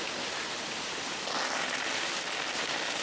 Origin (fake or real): real